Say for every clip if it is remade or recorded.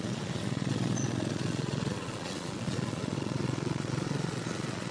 remade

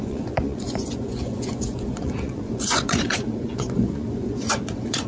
remade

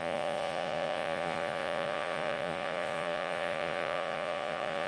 remade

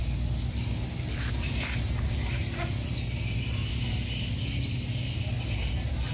recorded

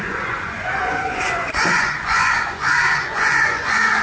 remade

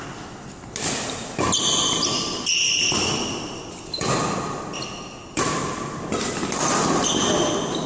recorded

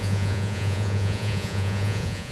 remade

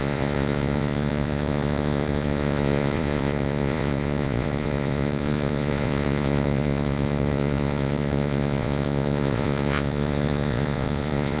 remade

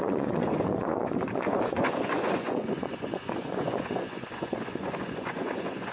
remade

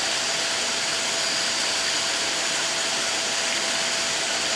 recorded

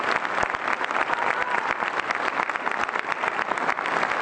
recorded